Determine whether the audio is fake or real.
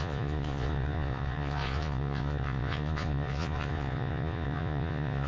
fake